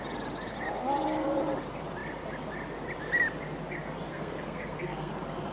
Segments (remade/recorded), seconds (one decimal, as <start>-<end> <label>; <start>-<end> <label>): 0.0-4.1 recorded; 4.1-5.1 remade; 5.1-5.5 recorded